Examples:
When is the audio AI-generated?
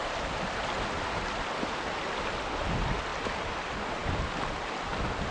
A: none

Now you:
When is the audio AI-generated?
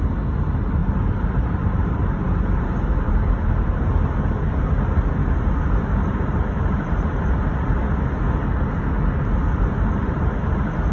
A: 0.8-3.9 (vocoder, BigVGAN v2); 5.2-7.2; 9.5-10.2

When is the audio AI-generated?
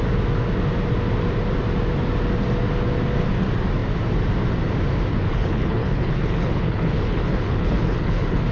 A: 5.1-8.5 (codec, HILCodec)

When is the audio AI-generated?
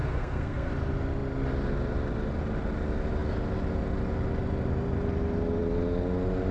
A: 0.0-0.7 (codec, SNAC)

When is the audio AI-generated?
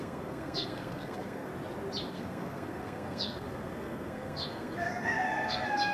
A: 0.0-1.5 (codec, SNAC); 2.1-5.9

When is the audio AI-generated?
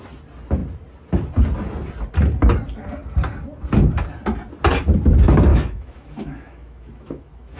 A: 5.5-7.6 (autoencoder, DAC-VAE)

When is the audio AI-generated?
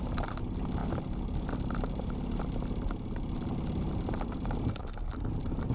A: none